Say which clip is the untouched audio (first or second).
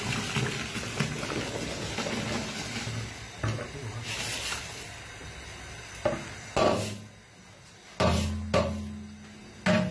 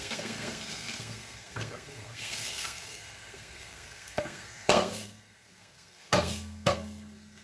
first